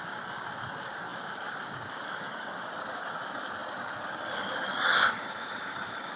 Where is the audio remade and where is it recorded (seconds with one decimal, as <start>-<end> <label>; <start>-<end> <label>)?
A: 0.0-6.2 remade